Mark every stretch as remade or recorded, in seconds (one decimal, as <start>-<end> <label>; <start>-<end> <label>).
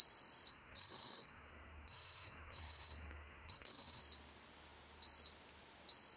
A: 0.0-0.5 recorded; 0.5-4.0 remade; 4.0-6.2 recorded